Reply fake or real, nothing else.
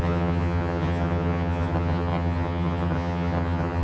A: fake